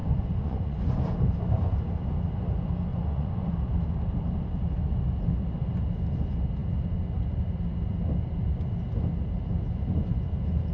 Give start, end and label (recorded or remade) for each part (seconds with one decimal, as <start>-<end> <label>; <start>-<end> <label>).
0.0-1.0 remade; 1.0-2.9 recorded; 2.9-3.5 remade; 3.5-10.7 recorded